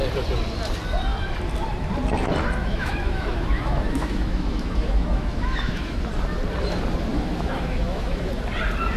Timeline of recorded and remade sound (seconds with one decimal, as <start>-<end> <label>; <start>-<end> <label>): 0.0-2.6 recorded; 2.6-6.0 remade; 6.0-7.1 recorded; 7.1-8.3 remade; 8.3-9.0 recorded